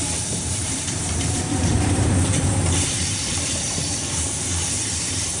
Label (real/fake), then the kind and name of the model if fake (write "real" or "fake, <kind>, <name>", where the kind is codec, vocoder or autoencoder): fake, vocoder, BigVGAN v2